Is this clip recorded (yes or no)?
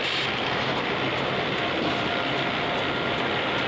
yes